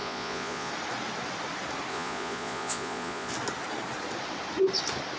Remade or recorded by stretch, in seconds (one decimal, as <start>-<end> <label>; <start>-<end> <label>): 0.0-0.7 remade; 0.7-1.9 recorded; 1.9-3.3 remade; 3.3-5.2 recorded